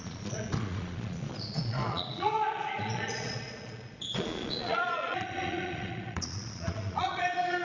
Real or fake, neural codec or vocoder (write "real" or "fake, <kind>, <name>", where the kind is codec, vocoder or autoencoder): fake, vocoder, Vocos